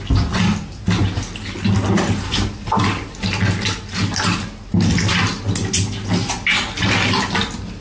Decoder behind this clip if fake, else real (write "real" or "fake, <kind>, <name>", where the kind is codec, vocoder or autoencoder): real